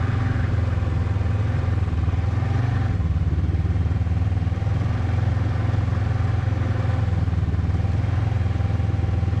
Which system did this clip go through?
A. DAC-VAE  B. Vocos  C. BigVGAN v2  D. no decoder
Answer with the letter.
D